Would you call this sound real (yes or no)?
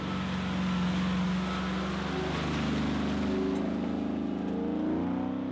yes